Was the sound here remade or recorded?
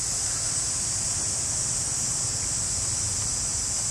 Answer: recorded